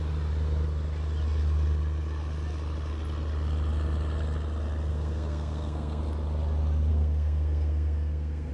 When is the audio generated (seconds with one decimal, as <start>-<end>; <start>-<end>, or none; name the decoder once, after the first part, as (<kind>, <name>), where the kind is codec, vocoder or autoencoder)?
4.9-6.0 (codec, SNAC); 6.9-8.5